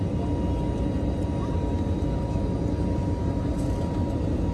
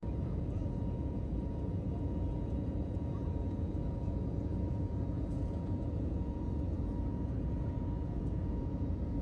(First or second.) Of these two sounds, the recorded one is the first